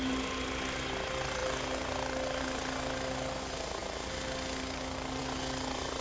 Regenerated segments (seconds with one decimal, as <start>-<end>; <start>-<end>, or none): none